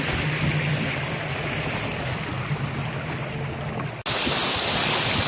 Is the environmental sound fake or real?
real